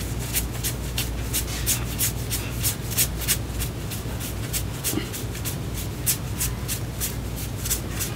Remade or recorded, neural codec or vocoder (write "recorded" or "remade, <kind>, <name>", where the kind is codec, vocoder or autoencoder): recorded